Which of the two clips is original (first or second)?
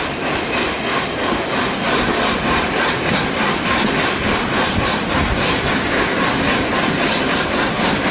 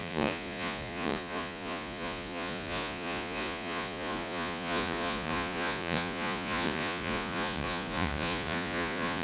first